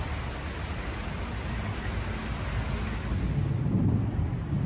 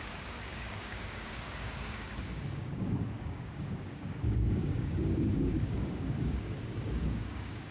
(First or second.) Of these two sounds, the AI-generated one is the second